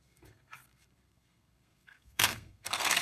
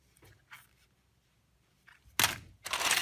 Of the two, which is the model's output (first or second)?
first